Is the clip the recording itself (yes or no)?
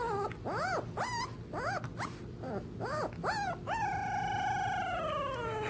yes